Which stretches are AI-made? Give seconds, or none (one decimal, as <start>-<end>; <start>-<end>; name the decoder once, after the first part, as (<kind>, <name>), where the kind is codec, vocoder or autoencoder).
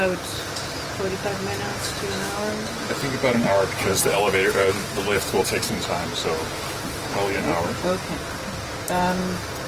1.7-2.5 (autoencoder, DAC-VAE)